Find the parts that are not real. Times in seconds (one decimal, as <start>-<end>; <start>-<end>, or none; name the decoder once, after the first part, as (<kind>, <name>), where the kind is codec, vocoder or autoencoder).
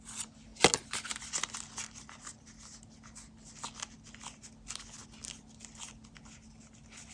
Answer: none